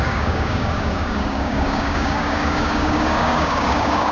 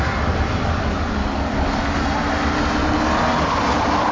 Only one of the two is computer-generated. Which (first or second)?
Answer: first